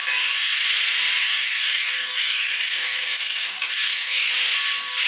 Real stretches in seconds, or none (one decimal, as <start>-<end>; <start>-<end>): 0.6-1.2; 4.3-5.1